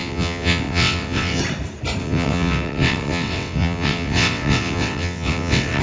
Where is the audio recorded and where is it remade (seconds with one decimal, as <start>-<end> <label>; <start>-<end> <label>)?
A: 0.0-1.4 remade; 1.4-2.0 recorded; 2.0-5.8 remade